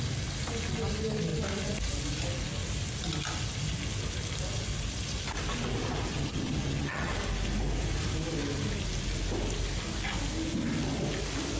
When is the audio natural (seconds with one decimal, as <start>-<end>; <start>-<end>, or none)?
0.0-6.1; 7.1-11.6

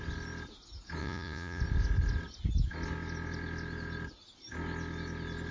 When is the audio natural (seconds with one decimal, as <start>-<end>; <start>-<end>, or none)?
0.0-1.0; 1.6-5.5

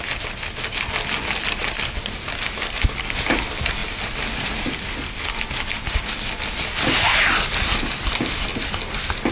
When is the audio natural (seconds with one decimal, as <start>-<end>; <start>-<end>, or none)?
0.0-9.3

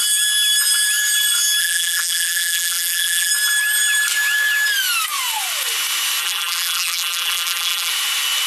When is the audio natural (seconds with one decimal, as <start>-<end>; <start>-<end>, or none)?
0.0-1.6; 3.3-6.2; 7.9-8.5

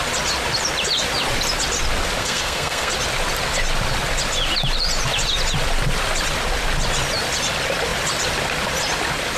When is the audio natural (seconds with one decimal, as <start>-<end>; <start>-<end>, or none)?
0.0-2.2; 2.9-9.4

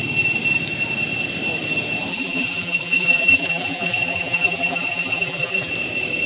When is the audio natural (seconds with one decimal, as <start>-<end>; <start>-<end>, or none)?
0.0-2.1; 5.7-6.3